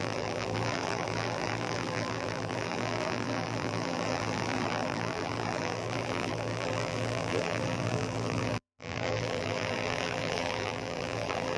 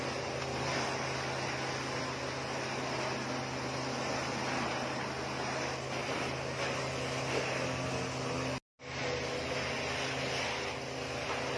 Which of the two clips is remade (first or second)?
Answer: first